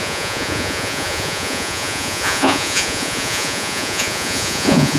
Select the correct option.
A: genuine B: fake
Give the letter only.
B